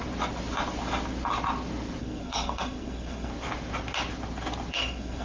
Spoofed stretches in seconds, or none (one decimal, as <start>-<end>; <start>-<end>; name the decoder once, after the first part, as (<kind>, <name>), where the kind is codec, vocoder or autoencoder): 2.0-3.3 (codec, SNAC); 4.7-5.2